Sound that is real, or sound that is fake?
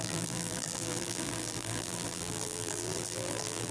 fake